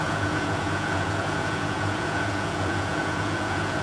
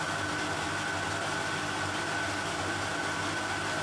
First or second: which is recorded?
second